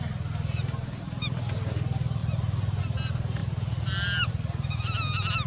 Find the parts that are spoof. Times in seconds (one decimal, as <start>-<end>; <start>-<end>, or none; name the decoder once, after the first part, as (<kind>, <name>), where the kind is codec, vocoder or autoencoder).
none